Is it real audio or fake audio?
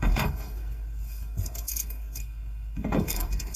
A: fake